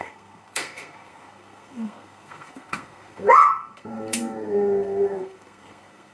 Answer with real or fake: fake